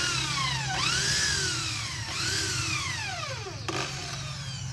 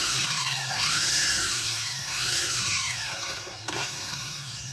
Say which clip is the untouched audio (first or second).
first